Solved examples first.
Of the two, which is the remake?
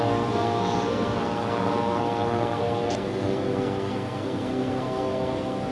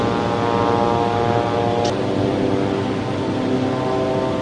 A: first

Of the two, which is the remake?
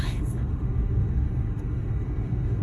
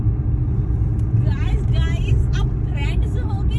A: first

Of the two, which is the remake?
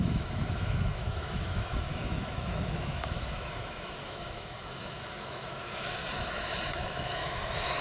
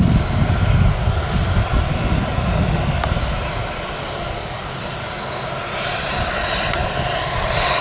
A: first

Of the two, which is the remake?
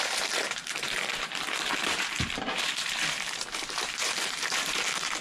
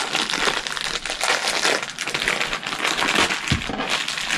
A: first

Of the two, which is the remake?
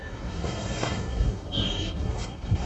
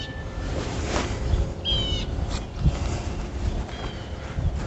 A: first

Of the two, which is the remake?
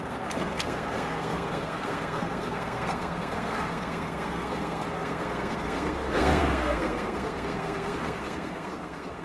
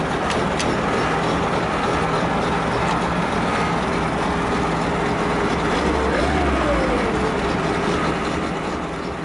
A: first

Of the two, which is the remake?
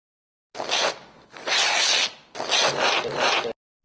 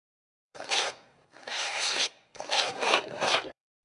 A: second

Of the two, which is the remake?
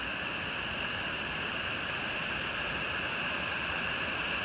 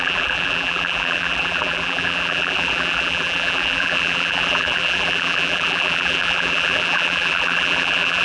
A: second